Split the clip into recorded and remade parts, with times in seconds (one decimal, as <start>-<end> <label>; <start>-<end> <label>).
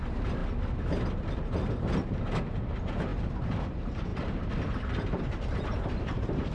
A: 0.0-0.4 remade; 0.4-2.4 recorded; 2.4-6.5 remade